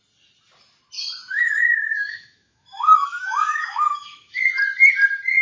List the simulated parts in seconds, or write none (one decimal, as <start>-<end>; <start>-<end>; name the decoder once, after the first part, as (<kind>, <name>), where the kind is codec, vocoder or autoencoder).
1.2-4.4 (autoencoder, DAC-VAE)